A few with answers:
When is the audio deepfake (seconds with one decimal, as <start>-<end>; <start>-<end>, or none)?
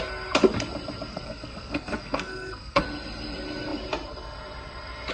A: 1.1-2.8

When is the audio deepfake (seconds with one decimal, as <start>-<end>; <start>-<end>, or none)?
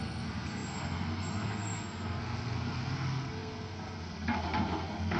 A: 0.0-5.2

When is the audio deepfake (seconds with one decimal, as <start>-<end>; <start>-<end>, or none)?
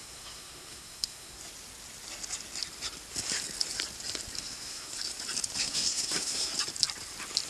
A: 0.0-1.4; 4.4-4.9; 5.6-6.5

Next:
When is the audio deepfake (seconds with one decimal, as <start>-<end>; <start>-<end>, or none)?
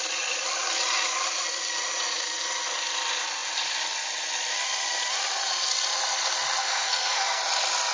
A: 6.6-7.4